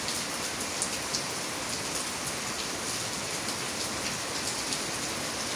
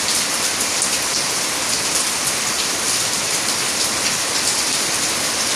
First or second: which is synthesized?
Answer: second